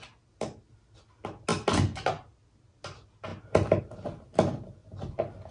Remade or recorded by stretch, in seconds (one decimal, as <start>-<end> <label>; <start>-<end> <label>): 0.0-5.5 recorded

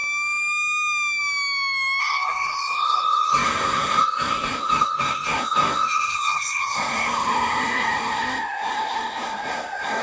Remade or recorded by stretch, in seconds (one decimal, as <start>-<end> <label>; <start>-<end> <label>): 0.0-2.0 recorded; 2.0-10.0 remade

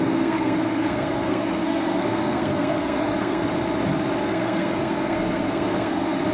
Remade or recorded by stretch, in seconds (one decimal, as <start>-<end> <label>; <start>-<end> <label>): 0.0-3.4 remade; 3.4-4.2 recorded; 4.2-6.3 remade

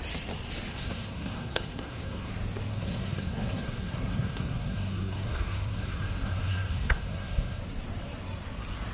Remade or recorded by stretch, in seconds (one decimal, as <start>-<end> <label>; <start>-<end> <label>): 0.0-0.7 recorded; 0.7-2.3 remade; 2.3-2.7 recorded; 2.7-7.6 remade; 7.6-8.9 recorded

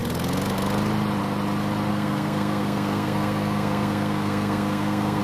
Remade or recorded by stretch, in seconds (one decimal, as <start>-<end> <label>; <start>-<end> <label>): 0.0-1.9 recorded; 1.9-5.2 remade

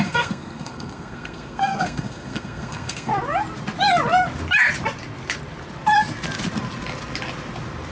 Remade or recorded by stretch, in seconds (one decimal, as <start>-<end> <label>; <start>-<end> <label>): 0.0-3.1 remade; 3.1-7.9 recorded

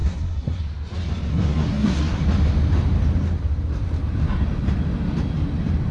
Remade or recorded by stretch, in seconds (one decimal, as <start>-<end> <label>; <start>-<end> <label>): 0.0-0.6 remade; 0.6-1.3 recorded; 1.3-2.2 remade; 2.2-5.9 recorded

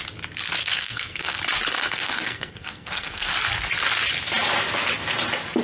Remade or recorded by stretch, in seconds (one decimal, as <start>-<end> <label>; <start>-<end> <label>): 0.0-0.6 recorded; 0.6-1.4 remade; 1.4-1.8 recorded; 1.8-3.3 remade; 3.3-5.6 recorded